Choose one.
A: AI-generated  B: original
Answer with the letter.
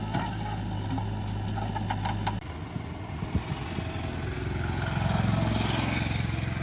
B